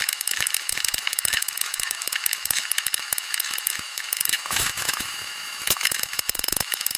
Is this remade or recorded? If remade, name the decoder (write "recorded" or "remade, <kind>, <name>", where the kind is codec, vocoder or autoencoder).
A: remade, autoencoder, DAC-VAE